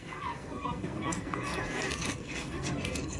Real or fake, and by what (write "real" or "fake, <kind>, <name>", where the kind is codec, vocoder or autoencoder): fake, codec, SNAC